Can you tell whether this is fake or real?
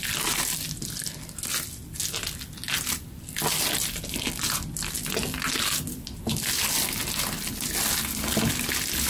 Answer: real